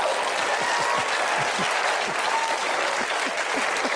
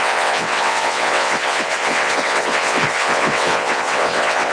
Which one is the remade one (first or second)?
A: second